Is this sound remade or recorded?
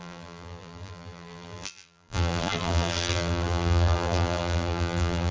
remade